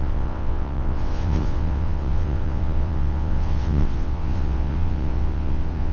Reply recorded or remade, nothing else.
remade